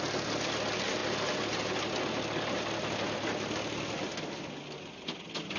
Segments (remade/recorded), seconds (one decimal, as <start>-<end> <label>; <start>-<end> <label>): 0.0-5.6 recorded

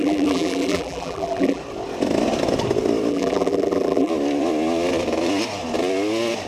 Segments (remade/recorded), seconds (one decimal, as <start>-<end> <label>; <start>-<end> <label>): 0.0-1.6 remade; 1.6-3.1 recorded; 3.1-4.1 remade; 4.1-6.5 recorded

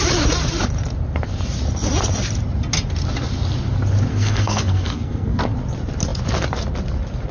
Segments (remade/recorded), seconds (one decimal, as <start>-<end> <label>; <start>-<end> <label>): 0.0-4.1 recorded; 4.1-5.4 remade; 5.4-7.3 recorded

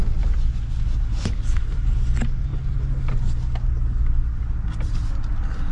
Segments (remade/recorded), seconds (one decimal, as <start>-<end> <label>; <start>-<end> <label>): 0.0-5.7 recorded

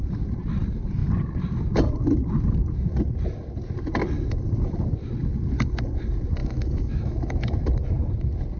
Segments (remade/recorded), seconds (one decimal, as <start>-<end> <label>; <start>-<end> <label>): 0.0-6.4 recorded; 6.4-7.7 remade; 7.7-8.6 recorded